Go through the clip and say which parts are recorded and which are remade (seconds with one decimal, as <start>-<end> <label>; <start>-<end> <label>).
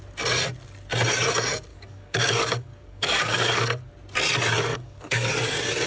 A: 0.0-1.7 recorded; 1.7-3.9 remade; 3.9-4.7 recorded; 4.7-5.3 remade; 5.3-5.9 recorded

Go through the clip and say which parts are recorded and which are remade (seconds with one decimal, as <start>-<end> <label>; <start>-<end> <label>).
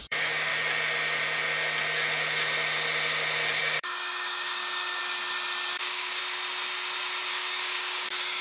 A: 0.0-0.5 remade; 0.5-3.6 recorded; 3.6-5.0 remade; 5.0-5.8 recorded; 5.8-6.2 remade; 6.2-7.3 recorded; 7.3-8.4 remade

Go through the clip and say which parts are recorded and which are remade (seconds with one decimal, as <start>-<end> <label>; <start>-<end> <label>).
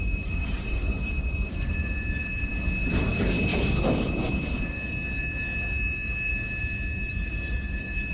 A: 0.0-2.5 remade; 2.5-3.0 recorded; 3.0-6.3 remade; 6.3-7.1 recorded; 7.1-8.1 remade